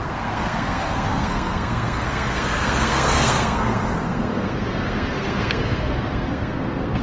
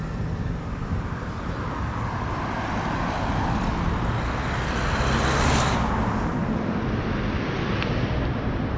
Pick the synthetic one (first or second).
first